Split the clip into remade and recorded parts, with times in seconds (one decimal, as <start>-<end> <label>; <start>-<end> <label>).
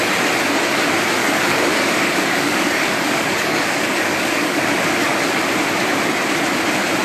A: 0.0-1.2 recorded; 1.2-5.4 remade; 5.4-7.0 recorded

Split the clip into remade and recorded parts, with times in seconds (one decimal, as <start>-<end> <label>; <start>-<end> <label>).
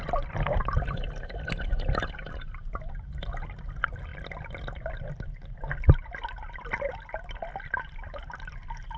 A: 0.0-9.0 recorded